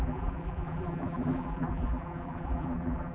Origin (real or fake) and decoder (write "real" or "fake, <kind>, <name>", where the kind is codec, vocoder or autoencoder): fake, vocoder, BigVGAN v2